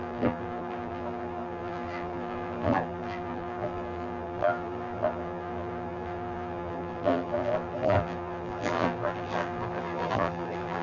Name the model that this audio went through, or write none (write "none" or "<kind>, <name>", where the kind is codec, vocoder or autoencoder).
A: vocoder, BigVGAN v2